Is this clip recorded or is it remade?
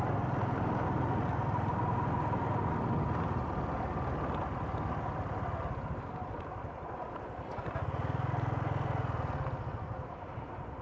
recorded